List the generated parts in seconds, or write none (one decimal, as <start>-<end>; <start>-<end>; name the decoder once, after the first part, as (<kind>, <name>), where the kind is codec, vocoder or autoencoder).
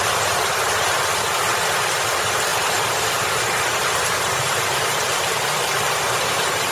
2.5-6.7 (vocoder, BigVGAN v2)